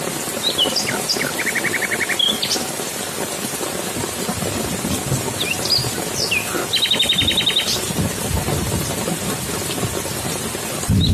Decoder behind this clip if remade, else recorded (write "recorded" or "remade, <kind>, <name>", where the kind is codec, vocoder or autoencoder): recorded